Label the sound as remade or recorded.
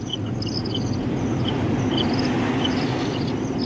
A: recorded